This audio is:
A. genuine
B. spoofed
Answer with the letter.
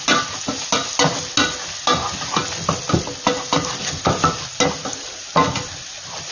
A